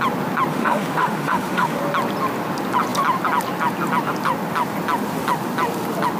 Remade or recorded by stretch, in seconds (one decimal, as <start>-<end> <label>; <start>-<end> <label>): 0.0-0.5 recorded; 0.5-1.8 remade; 1.8-6.2 recorded